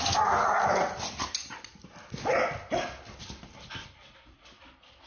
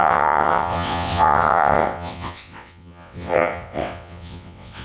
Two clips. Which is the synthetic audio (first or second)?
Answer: second